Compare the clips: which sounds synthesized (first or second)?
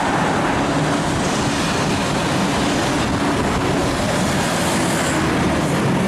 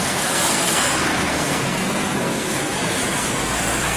second